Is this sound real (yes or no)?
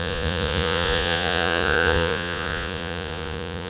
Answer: no